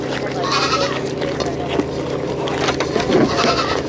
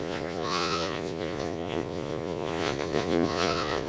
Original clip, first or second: first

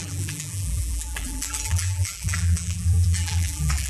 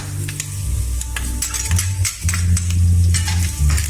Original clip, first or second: second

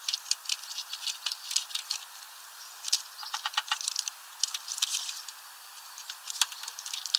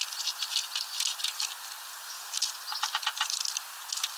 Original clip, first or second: second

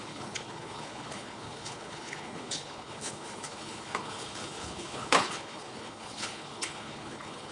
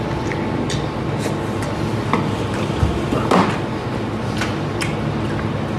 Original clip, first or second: second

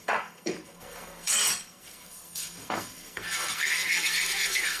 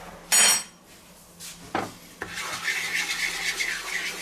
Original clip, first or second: second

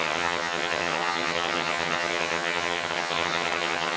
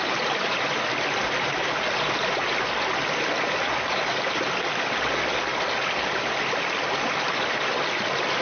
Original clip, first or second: second